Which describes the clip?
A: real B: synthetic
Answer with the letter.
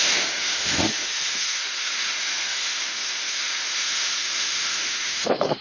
B